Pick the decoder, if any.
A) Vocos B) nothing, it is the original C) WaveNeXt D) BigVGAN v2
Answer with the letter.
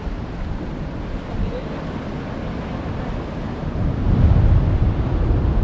B